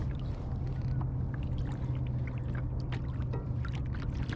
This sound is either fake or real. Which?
real